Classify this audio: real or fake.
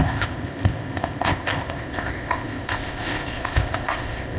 fake